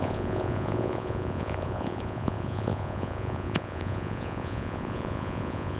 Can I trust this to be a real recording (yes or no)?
no